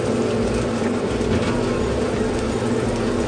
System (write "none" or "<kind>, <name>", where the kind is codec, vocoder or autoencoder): none